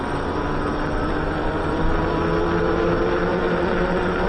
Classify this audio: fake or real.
real